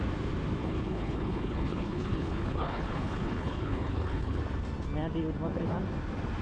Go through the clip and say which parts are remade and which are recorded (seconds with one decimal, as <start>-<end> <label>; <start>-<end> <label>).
0.0-0.6 recorded; 0.6-4.4 remade; 4.4-6.4 recorded